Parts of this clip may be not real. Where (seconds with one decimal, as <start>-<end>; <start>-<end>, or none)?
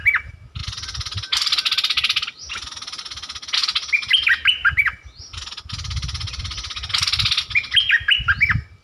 none